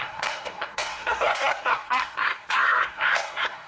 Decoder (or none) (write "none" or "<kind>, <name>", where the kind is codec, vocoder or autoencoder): codec, SNAC